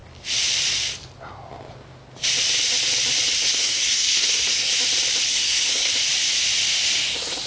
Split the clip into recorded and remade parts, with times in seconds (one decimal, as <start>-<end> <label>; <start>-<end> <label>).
0.0-3.4 recorded; 3.4-4.7 remade; 4.7-5.3 recorded; 5.3-5.9 remade; 5.9-7.5 recorded